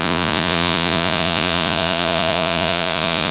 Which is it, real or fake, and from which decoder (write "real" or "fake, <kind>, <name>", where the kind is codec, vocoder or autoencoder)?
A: fake, vocoder, Vocos